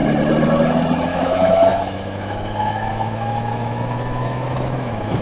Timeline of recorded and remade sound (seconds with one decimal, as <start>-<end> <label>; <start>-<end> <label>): 0.0-1.1 recorded; 1.1-5.2 remade

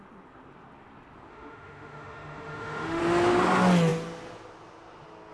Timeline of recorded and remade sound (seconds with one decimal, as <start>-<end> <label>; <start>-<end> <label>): 0.0-1.3 recorded; 1.3-3.0 remade; 3.0-5.3 recorded

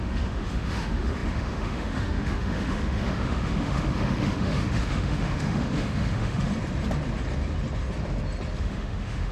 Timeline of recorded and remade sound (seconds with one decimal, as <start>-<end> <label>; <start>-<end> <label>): 0.0-6.5 remade; 6.5-8.6 recorded; 8.6-9.3 remade

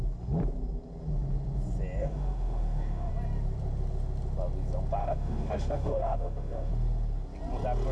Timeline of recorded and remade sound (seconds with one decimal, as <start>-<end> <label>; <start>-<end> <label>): 0.0-2.0 recorded; 2.0-3.1 remade; 3.1-5.0 recorded; 5.0-6.7 remade; 6.7-7.9 recorded